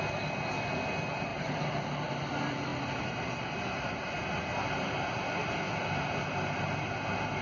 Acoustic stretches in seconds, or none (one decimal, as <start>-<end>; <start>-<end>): 0.0-1.3; 2.1-2.7; 4.0-7.4